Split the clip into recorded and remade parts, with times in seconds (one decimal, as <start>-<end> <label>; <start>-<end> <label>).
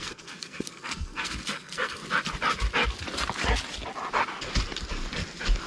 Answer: 0.0-2.0 remade; 2.0-5.7 recorded